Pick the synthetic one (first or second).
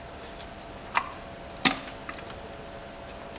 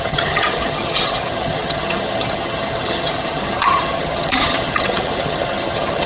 second